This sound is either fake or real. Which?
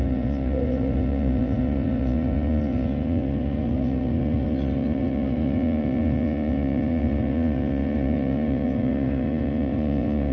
fake